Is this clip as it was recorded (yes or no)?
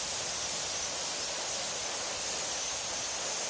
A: yes